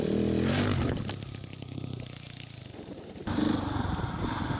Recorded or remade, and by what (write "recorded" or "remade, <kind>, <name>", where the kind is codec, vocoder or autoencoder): recorded